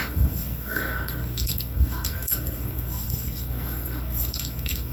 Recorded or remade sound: remade